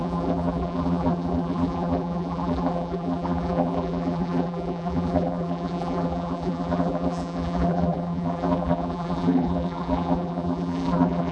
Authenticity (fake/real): fake